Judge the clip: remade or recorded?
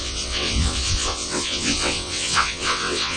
remade